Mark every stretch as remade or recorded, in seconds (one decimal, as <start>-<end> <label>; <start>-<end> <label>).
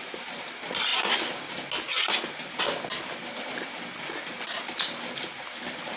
0.0-6.0 recorded